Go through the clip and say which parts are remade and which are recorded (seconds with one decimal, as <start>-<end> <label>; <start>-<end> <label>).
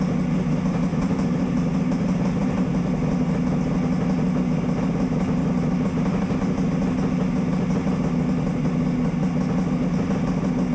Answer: 0.0-0.9 recorded; 0.9-2.8 remade; 2.8-10.7 recorded